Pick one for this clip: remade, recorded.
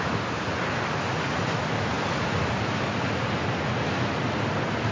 recorded